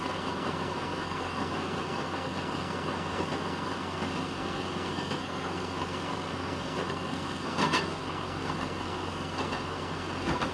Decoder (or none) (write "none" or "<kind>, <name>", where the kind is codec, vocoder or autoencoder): codec, SNAC